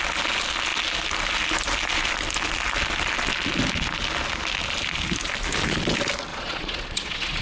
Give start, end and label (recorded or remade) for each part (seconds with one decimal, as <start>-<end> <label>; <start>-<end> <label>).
0.0-6.3 recorded; 6.3-7.4 remade